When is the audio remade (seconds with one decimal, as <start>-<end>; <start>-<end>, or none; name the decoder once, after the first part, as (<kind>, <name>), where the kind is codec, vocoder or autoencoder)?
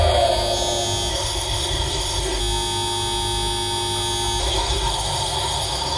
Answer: 1.1-2.4 (codec, SNAC); 4.4-6.0